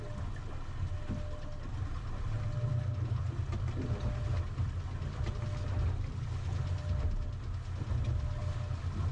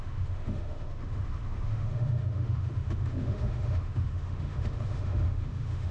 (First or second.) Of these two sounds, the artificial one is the second